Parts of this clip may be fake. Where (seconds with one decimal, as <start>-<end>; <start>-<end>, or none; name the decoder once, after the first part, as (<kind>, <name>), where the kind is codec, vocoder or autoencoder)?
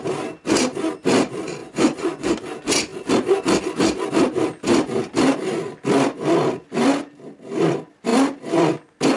1.6-2.3 (vocoder, Vocos)